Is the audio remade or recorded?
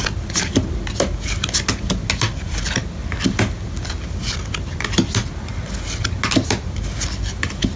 recorded